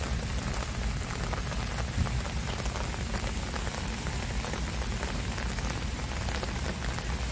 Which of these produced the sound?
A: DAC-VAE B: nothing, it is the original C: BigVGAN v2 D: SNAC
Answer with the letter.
B